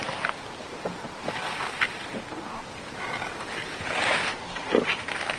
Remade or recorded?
recorded